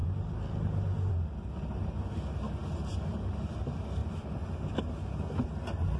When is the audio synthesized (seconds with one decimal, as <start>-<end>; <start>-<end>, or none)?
0.0-1.1; 2.6-3.6; 4.0-4.8